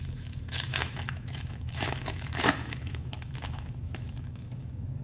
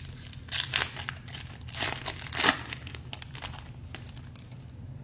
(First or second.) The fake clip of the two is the first